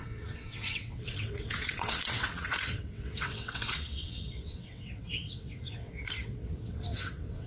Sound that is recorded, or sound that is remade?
remade